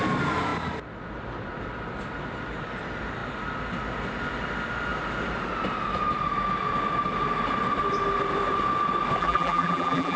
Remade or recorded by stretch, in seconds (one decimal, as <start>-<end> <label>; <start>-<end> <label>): 0.0-9.2 recorded; 9.2-10.2 remade